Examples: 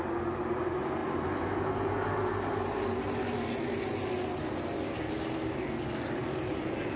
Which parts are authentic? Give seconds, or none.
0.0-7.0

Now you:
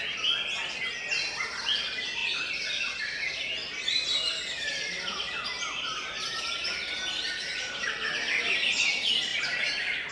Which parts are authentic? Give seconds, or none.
0.0-3.6; 6.8-9.3

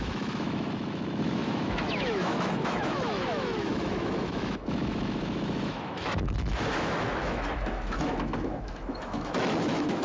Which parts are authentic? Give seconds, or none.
none

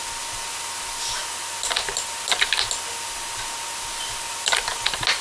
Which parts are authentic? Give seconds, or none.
0.0-5.2

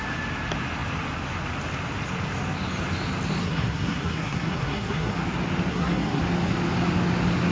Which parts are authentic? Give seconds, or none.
0.0-3.4; 5.2-5.7; 6.2-7.5

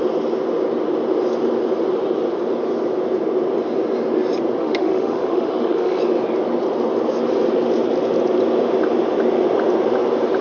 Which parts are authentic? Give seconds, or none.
0.0-4.6; 6.0-10.4

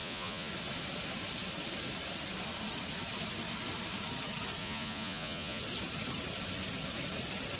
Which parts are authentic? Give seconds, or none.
0.5-4.6; 5.6-7.6